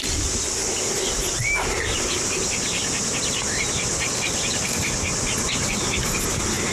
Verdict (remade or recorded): recorded